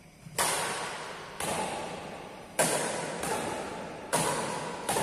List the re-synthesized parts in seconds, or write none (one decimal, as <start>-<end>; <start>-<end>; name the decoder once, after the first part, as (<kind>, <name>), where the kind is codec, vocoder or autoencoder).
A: none